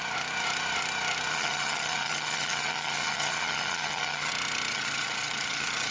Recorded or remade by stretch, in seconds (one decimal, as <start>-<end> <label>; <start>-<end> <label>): 0.0-1.3 recorded; 1.3-4.3 remade; 4.3-4.7 recorded; 4.7-5.9 remade